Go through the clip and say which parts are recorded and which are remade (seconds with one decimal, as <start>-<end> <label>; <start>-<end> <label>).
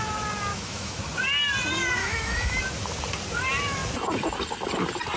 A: 0.0-0.5 recorded; 0.5-1.0 remade; 1.0-2.0 recorded; 2.0-2.6 remade; 2.6-5.2 recorded